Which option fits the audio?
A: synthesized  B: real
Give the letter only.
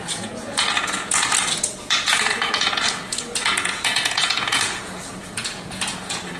A